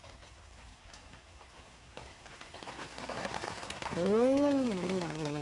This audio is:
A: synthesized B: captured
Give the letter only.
A